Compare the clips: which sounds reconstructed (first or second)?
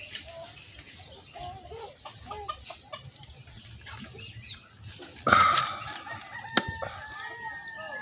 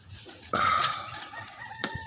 second